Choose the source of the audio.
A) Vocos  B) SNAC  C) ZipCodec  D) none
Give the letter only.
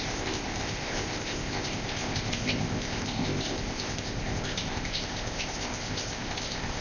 C